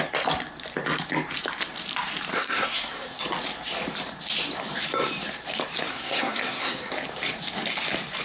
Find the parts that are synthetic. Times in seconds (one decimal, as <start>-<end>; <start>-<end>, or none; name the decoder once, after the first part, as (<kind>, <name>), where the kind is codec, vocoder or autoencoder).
2.3-3.2 (codec, SNAC); 5.9-6.9